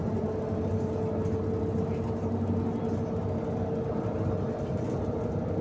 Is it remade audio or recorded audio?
recorded